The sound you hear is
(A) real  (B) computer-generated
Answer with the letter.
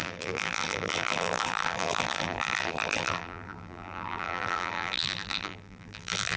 B